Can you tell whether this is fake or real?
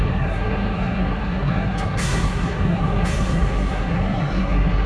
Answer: fake